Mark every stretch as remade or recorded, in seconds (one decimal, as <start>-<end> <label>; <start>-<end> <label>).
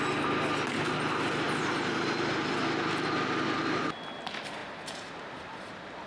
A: 0.0-6.1 recorded